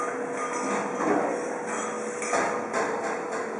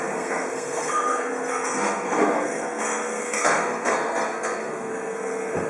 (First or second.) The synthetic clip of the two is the second